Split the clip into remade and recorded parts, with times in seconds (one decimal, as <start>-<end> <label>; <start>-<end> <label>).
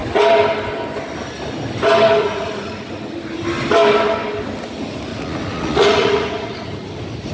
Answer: 0.0-2.2 recorded; 2.2-2.9 remade; 2.9-5.1 recorded; 5.1-6.7 remade; 6.7-7.3 recorded